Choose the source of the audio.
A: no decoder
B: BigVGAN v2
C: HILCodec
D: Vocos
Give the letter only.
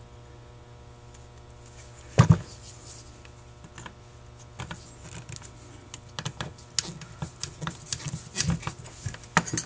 A